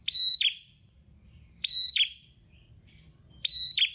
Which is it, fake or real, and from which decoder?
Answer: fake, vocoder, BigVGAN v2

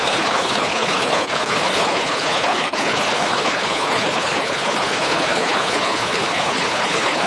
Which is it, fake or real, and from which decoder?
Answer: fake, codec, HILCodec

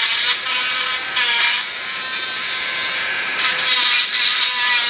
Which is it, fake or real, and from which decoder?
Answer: fake, vocoder, BigVGAN v2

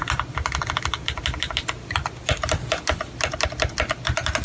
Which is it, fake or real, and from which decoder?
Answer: fake, vocoder, BigVGAN v2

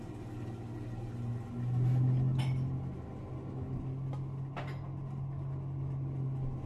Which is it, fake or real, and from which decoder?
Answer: real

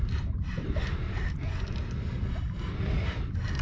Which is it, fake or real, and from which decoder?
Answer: real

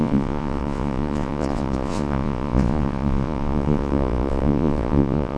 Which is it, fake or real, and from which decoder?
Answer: fake, vocoder, Vocos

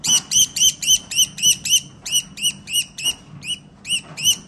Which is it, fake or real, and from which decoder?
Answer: real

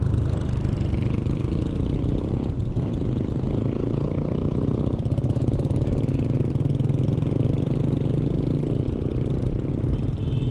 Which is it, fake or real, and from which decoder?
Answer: real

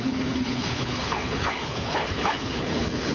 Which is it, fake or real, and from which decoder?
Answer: fake, codec, HILCodec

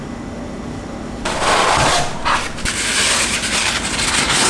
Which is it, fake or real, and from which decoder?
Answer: real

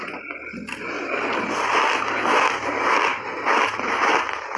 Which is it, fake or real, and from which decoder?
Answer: real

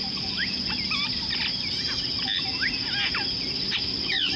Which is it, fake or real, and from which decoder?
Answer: real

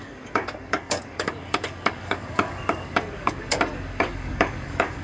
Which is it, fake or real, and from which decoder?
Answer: fake, codec, DAC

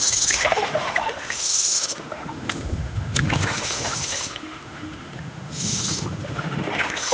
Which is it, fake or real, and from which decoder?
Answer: fake, autoencoder, DAC-VAE